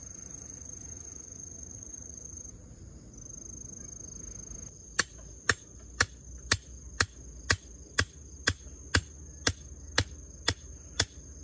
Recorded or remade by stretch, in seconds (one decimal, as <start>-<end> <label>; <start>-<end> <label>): 0.0-2.8 remade; 2.8-11.4 recorded